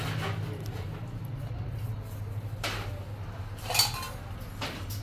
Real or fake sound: real